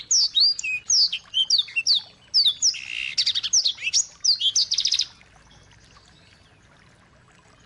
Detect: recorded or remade recorded